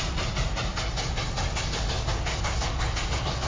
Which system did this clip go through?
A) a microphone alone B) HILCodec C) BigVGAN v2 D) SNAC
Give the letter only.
A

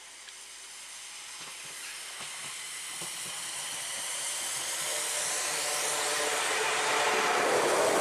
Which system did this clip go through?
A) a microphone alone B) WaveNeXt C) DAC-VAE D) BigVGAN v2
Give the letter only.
A